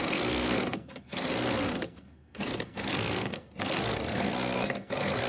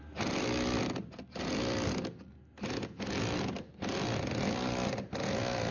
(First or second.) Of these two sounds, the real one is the second